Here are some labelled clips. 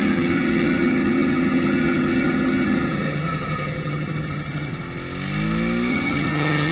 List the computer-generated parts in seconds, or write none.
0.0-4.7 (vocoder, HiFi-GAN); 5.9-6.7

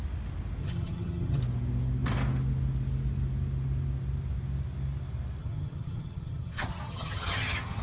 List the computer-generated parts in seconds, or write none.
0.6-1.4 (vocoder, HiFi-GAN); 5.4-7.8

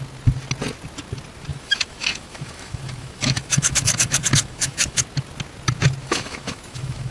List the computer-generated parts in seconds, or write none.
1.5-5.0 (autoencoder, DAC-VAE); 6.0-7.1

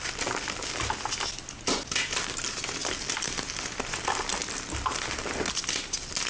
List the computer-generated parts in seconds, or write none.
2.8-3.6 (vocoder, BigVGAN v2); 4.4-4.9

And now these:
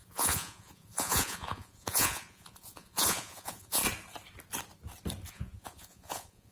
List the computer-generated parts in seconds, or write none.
0.0-3.8 (vocoder, Vocos); 5.3-6.5